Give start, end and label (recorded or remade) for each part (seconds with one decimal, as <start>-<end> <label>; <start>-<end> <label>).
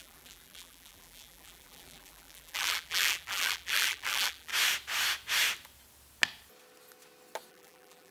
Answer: 0.0-4.5 remade; 4.5-7.5 recorded; 7.5-8.1 remade